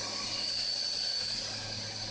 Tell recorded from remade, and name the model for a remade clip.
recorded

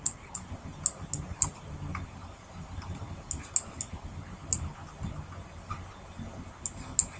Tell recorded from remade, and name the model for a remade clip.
recorded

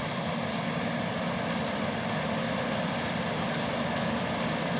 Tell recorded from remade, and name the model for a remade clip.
recorded